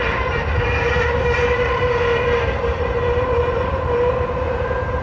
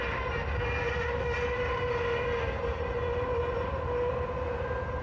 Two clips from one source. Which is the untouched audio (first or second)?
second